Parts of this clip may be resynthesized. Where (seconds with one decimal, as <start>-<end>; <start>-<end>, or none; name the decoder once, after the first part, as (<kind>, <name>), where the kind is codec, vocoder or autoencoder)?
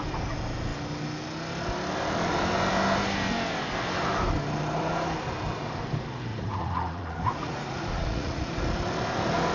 6.3-8.5 (vocoder, Vocos)